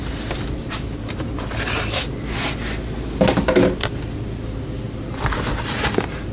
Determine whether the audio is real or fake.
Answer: real